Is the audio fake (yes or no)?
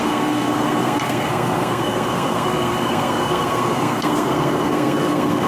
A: yes